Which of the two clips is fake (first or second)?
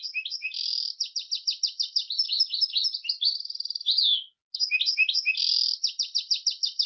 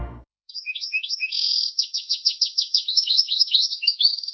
second